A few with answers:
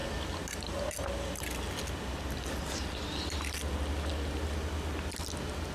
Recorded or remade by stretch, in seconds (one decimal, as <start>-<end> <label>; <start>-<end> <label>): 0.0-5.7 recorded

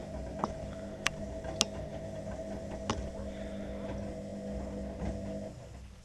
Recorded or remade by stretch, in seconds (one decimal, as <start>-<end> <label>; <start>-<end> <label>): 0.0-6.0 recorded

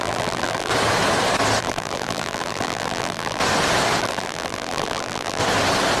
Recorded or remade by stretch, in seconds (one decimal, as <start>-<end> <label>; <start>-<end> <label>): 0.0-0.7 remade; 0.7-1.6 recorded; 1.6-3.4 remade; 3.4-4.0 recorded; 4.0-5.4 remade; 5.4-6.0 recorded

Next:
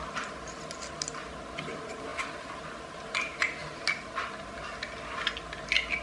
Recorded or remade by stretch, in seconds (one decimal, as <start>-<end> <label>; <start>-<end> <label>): 0.0-6.0 recorded